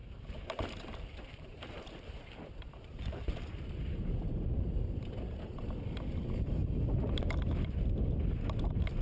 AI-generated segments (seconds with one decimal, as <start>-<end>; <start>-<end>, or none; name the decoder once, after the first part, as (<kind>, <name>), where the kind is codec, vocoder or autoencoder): 0.0-5.1 (vocoder, BigVGAN v2); 6.6-7.2